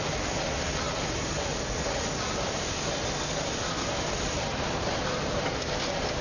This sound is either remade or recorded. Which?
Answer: recorded